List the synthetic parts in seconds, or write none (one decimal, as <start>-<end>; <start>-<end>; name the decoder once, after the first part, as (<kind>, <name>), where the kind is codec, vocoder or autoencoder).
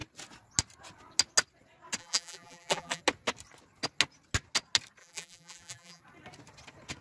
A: 2.0-3.0 (vocoder, BigVGAN v2); 5.0-6.0